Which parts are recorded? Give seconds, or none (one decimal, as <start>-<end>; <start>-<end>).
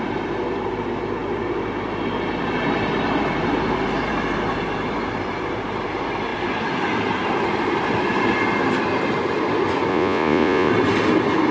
0.0-9.9; 10.7-11.5